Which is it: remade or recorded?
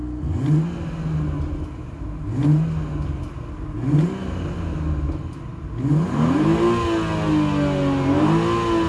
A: recorded